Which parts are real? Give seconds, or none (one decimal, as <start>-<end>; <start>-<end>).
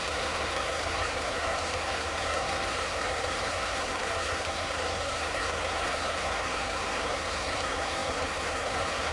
none